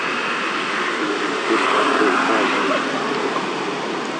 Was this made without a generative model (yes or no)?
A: yes